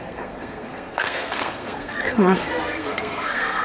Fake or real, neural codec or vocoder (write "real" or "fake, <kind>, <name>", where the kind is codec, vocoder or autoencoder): fake, codec, SNAC